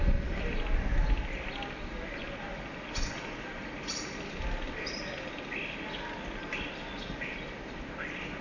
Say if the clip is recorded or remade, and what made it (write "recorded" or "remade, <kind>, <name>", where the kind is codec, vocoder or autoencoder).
recorded